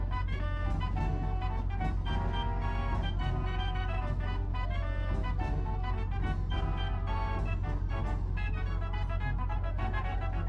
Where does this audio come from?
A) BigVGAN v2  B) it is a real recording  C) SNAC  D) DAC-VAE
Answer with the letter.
B